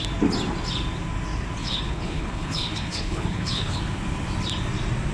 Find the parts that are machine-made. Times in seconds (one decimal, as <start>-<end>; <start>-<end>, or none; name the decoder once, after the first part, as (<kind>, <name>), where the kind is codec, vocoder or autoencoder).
1.6-3.8 (codec, HILCodec)